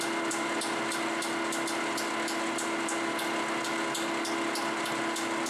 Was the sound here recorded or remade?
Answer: recorded